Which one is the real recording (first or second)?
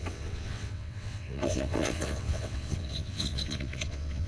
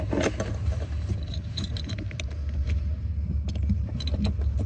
second